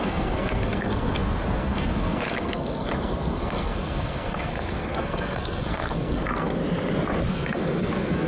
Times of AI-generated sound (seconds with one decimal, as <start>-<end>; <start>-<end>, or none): 0.0-6.6; 7.3-8.3